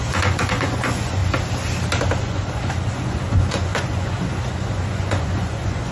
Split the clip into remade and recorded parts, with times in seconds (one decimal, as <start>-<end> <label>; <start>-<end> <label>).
0.0-1.2 remade; 1.2-2.2 recorded; 2.2-5.9 remade